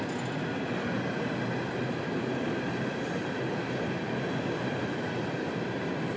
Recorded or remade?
recorded